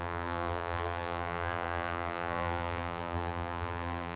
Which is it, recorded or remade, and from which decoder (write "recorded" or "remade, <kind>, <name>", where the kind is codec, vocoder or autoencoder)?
remade, vocoder, BigVGAN v2